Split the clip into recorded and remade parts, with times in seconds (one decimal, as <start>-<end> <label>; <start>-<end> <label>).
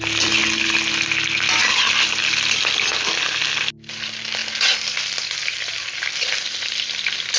0.0-7.4 recorded